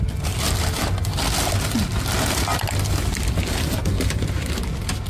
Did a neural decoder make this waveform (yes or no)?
no